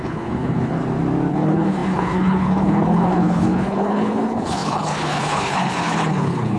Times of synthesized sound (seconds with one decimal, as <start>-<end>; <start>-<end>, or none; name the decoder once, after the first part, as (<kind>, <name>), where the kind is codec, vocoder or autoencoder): 0.0-0.8 (codec, HILCodec); 1.3-6.6